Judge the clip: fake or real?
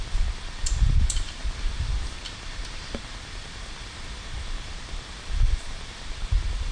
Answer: fake